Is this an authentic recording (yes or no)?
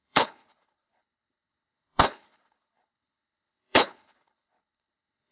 no